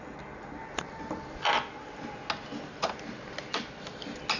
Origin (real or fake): real